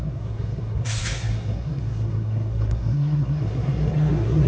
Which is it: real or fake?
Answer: fake